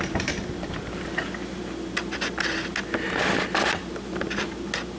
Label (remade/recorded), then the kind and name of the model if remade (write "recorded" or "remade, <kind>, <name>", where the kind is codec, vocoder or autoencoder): recorded